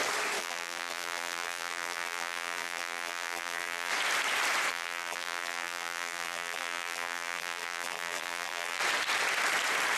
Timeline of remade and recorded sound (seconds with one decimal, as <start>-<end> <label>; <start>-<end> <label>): 0.0-0.4 recorded; 0.4-3.9 remade; 3.9-4.7 recorded; 4.7-8.8 remade; 8.8-10.0 recorded